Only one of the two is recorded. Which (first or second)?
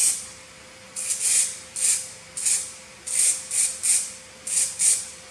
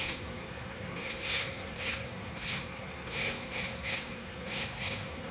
first